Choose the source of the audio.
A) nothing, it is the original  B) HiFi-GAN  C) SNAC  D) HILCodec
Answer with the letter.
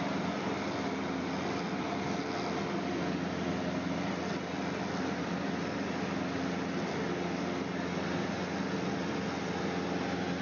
A